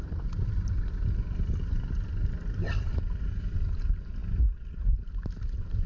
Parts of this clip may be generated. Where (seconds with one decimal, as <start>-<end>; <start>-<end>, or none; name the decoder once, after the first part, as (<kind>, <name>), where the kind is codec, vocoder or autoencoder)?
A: none